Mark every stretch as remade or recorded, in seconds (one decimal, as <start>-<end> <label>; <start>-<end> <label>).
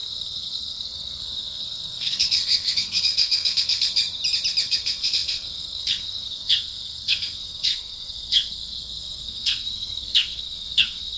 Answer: 0.0-4.0 remade; 4.0-4.6 recorded; 4.6-11.2 remade